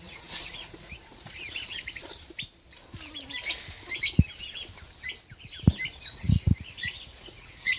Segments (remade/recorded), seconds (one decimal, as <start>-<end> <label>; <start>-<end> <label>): 0.0-1.7 remade; 1.7-6.1 recorded; 6.1-7.8 remade